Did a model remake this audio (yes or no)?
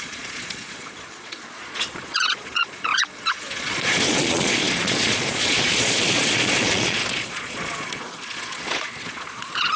yes